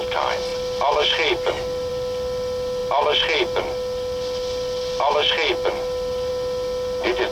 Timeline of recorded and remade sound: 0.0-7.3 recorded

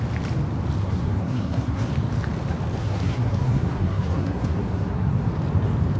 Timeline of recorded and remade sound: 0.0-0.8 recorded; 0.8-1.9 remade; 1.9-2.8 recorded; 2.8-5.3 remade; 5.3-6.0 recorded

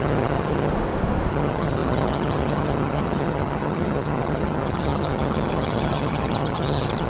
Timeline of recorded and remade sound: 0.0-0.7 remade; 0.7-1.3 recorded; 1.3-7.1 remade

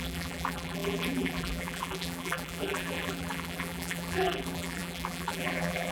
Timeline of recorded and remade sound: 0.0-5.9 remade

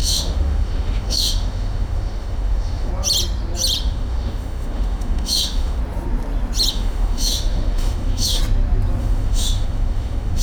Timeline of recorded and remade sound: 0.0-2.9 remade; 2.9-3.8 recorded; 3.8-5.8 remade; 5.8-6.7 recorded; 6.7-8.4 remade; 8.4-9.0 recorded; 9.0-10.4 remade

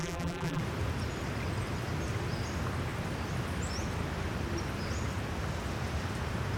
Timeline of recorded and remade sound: 0.0-0.6 remade; 0.6-6.6 recorded